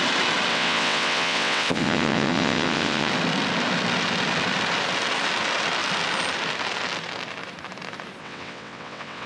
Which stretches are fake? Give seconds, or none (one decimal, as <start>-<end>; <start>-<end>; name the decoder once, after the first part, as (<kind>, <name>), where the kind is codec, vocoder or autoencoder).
0.5-3.1 (vocoder, WaveNeXt); 8.2-9.3